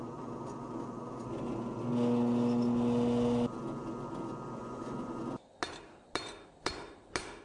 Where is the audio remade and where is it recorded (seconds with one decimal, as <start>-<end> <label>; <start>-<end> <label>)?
0.0-4.6 recorded; 4.6-5.2 remade; 5.2-7.4 recorded